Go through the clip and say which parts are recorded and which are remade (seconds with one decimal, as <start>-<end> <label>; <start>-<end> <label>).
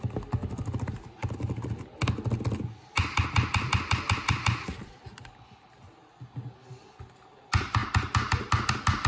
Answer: 0.0-9.1 recorded